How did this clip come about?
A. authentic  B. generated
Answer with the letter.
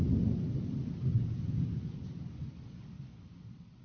A